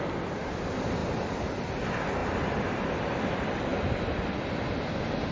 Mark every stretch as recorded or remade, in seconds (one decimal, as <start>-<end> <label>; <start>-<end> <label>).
0.0-5.3 recorded